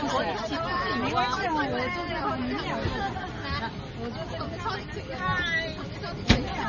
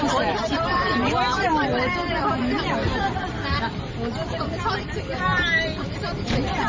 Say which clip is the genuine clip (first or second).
first